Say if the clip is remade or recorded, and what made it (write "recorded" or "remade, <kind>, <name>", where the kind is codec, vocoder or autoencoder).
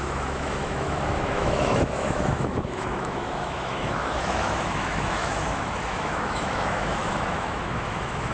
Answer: remade, autoencoder, DAC-VAE